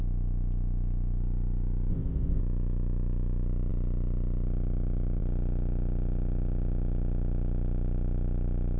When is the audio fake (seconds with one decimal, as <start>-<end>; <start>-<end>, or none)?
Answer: 1.9-2.4